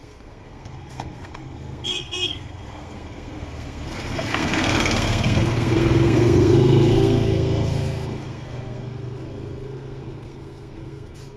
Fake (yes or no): yes